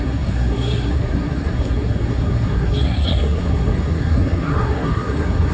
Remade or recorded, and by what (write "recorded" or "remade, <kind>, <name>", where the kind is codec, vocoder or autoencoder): remade, codec, SNAC